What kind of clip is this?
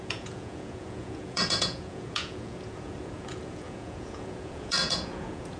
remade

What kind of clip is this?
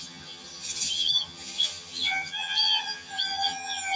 remade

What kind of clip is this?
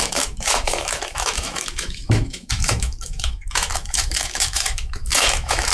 remade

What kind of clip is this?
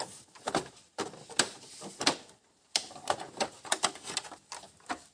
recorded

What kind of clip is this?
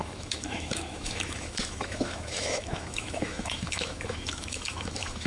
remade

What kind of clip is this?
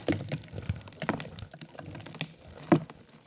recorded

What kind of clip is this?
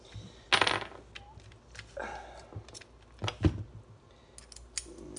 recorded